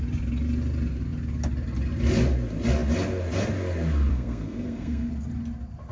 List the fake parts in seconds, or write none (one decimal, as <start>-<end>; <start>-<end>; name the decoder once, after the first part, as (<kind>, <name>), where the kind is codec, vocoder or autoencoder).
4.1-5.1 (codec, SNAC)